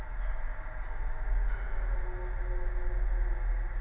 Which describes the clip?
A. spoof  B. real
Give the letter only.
B